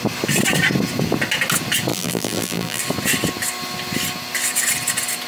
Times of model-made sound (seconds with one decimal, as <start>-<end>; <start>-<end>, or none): 1.9-2.8